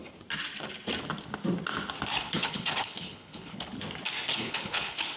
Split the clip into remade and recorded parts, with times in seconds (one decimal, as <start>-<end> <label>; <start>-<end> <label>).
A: 0.0-2.2 recorded; 2.2-3.6 remade; 3.6-4.3 recorded; 4.3-5.2 remade